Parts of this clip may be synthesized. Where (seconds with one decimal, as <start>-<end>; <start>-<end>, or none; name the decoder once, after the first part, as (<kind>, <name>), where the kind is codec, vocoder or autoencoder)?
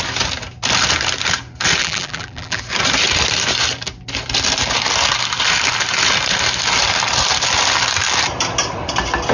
1.8-2.6 (vocoder, BigVGAN v2)